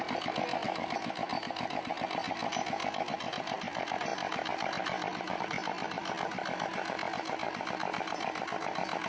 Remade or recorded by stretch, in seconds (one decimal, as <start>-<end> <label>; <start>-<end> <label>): 0.0-9.1 recorded